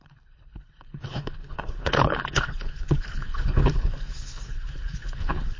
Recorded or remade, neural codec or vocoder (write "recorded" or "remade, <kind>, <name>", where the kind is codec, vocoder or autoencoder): remade, codec, HILCodec